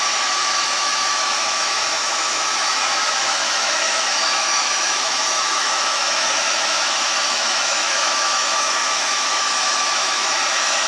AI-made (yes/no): yes